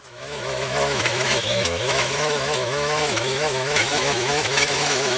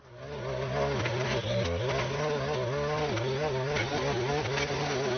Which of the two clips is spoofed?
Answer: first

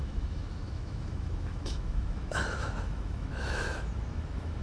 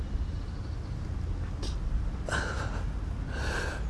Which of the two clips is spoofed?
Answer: first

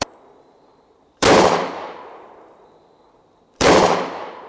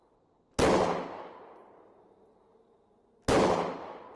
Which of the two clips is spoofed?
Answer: first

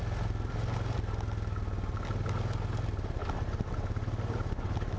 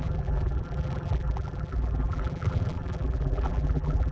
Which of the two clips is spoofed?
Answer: second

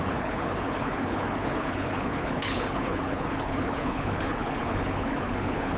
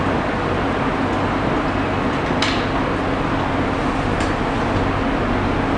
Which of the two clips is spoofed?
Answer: first